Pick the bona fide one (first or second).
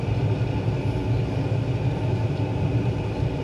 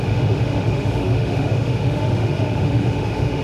first